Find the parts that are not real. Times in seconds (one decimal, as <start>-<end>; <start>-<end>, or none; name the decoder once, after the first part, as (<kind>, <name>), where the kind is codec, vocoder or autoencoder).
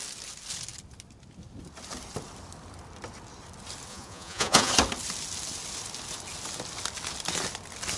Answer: 3.9-4.7 (vocoder, Vocos)